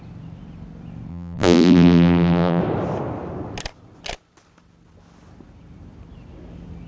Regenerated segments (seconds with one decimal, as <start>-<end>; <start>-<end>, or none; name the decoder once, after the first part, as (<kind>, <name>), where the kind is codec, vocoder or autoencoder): 1.1-2.6 (vocoder, BigVGAN v2)